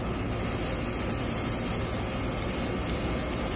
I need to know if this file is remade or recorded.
recorded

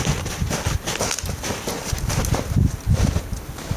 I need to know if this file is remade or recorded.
recorded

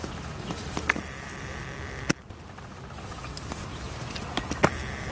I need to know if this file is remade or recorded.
recorded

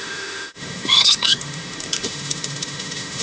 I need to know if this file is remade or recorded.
remade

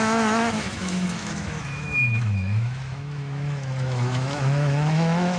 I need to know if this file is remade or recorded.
remade